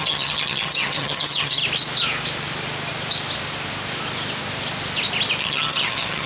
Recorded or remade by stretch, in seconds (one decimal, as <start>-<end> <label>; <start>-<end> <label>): 0.0-1.6 remade; 1.6-5.4 recorded; 5.4-6.3 remade